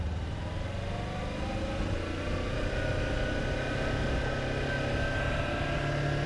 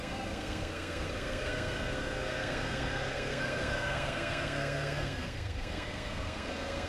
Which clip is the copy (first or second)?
second